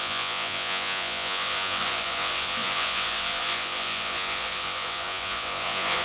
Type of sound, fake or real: fake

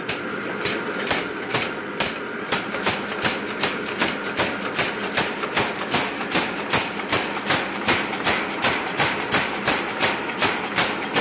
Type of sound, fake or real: fake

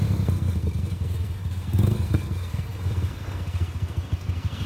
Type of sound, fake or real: fake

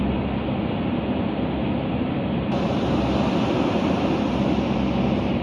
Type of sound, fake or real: real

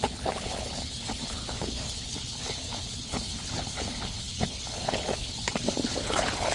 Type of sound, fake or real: fake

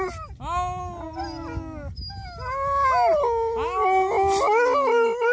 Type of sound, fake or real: real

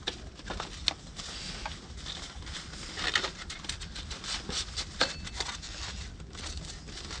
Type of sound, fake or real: real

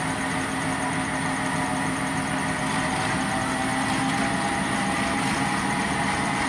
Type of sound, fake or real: real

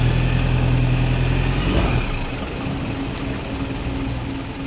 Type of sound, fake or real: real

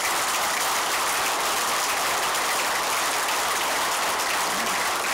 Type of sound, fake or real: real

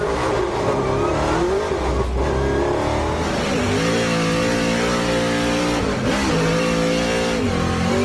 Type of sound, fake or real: real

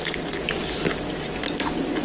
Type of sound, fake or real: real